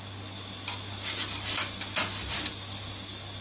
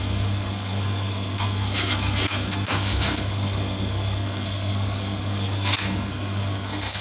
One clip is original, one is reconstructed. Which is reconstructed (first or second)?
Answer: second